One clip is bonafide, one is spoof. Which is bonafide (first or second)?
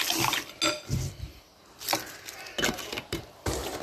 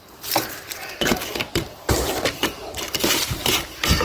first